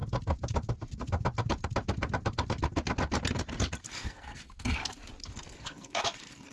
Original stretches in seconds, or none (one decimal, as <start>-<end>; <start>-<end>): 0.0-3.9; 4.8-5.3

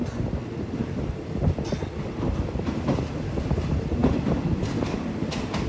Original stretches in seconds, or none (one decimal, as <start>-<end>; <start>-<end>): 0.0-5.7

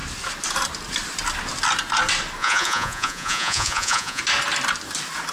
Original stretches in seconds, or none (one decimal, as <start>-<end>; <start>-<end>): 0.0-2.4; 4.2-5.3

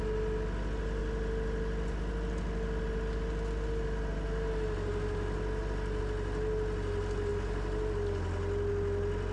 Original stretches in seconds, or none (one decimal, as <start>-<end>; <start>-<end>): 0.0-9.3

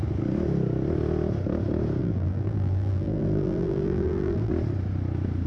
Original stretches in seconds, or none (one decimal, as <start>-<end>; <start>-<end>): 0.0-2.0; 4.5-5.5

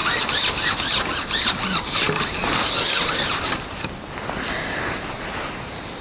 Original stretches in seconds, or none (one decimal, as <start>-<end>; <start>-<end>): 0.0-1.8; 2.4-4.7